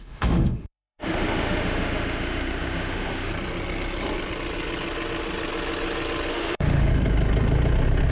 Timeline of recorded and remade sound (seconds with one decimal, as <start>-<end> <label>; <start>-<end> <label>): 0.0-3.3 remade; 3.3-6.3 recorded; 6.3-6.9 remade; 6.9-8.1 recorded